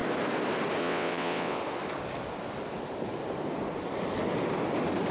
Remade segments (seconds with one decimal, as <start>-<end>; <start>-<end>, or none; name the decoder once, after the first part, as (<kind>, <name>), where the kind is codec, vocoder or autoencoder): 0.8-1.6 (vocoder, WaveNeXt)